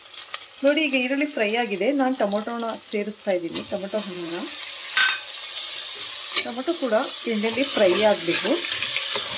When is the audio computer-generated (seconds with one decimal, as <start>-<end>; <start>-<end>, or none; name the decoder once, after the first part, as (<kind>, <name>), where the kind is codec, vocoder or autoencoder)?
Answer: 3.7-4.3 (vocoder, Vocos)